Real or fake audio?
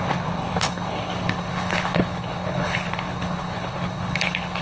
fake